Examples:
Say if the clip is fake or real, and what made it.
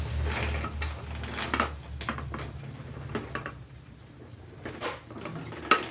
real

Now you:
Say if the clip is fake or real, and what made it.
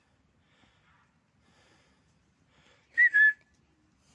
real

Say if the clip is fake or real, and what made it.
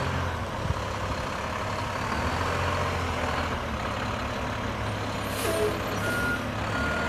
real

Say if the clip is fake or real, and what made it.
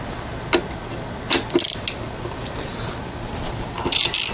real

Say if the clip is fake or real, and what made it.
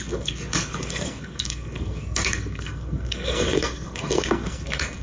fake, codec, SNAC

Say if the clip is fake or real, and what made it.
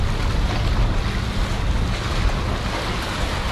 real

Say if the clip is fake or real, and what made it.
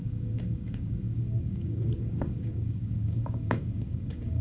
fake, codec, DAC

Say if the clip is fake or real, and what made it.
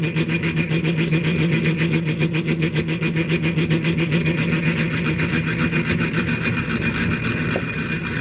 real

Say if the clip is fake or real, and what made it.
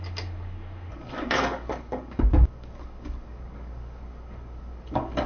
fake, codec, DAC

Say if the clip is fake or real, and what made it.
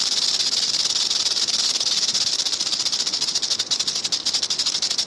real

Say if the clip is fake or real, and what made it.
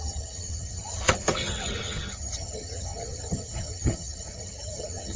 fake, vocoder, HiFi-GAN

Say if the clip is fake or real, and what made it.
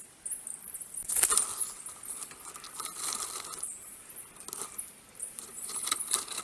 real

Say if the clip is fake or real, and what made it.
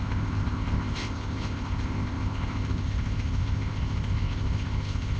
fake, codec, ZipCodec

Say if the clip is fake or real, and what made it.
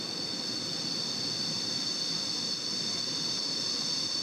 real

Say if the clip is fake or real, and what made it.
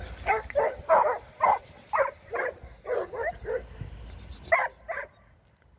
real